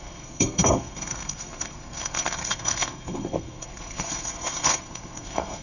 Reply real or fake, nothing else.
fake